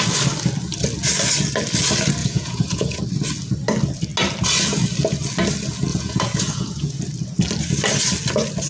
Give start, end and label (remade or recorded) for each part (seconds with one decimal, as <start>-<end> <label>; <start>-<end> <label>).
0.0-2.2 recorded; 2.2-3.0 remade; 3.0-5.9 recorded; 5.9-7.0 remade; 7.0-8.7 recorded